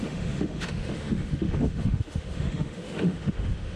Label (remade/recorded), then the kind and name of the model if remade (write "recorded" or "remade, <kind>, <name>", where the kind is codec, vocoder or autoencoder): remade, autoencoder, DAC-VAE